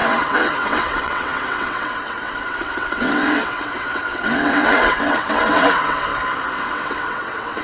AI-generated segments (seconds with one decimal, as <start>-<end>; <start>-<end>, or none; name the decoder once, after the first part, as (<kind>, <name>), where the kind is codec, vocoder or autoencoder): 0.0-6.1 (vocoder, WaveNeXt); 6.6-7.6